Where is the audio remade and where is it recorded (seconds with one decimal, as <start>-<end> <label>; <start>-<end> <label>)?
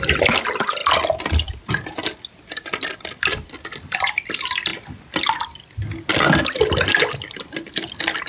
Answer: 0.0-8.3 recorded